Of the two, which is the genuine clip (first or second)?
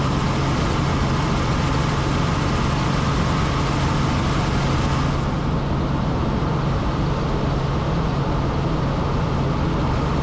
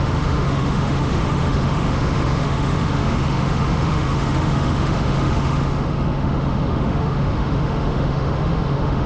first